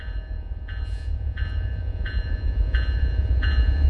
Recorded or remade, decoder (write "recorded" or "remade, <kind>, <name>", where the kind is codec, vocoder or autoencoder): remade, vocoder, Vocos